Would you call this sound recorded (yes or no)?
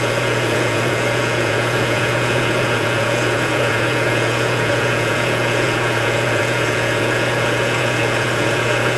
no